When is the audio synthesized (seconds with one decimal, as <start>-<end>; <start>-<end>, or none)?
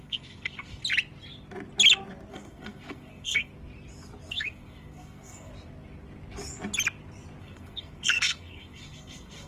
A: 0.0-0.8; 2.3-3.5; 4.3-5.5; 7.4-9.5